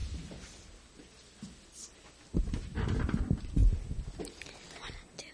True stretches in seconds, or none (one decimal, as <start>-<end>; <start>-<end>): 0.0-5.3